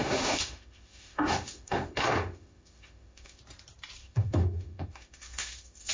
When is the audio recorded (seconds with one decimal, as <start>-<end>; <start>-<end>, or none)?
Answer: 3.4-4.0